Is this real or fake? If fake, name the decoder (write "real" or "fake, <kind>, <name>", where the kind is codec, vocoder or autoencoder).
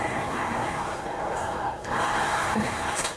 fake, codec, SNAC